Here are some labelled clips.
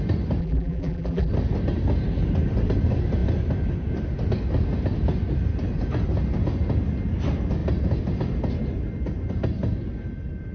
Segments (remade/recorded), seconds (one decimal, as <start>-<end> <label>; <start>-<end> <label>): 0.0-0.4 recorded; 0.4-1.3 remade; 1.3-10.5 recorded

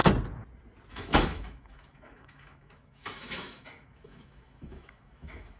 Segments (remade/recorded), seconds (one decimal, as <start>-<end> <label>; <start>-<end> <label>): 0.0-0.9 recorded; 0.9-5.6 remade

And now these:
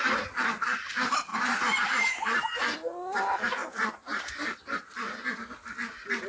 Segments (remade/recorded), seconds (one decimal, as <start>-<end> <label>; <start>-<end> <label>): 0.0-1.3 recorded; 1.3-2.6 remade; 2.6-3.6 recorded; 3.6-4.6 remade; 4.6-6.3 recorded

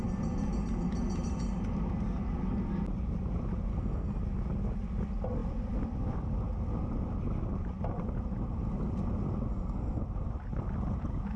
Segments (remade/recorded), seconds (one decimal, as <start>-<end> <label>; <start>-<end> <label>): 0.0-3.7 recorded; 3.7-4.2 remade; 4.2-9.5 recorded; 9.5-10.0 remade; 10.0-11.4 recorded